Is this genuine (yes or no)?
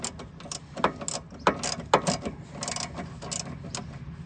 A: yes